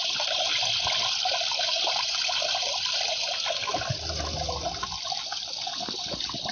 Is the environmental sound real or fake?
real